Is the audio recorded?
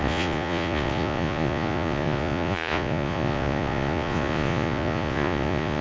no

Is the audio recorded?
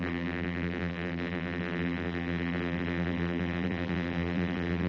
no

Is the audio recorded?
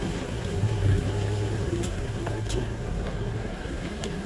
no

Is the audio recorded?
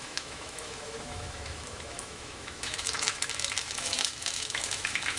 no